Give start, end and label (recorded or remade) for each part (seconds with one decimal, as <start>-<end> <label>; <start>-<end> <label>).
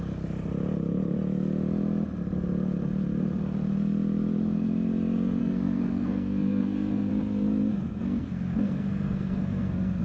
0.0-5.4 recorded; 5.4-7.1 remade; 7.1-7.7 recorded; 7.7-10.0 remade